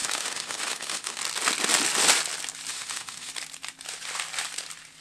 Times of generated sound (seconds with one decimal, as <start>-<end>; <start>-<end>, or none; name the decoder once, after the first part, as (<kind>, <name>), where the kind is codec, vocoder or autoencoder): 0.0-1.2 (autoencoder, DAC-VAE); 2.7-3.3